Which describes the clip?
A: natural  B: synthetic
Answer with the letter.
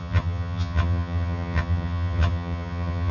B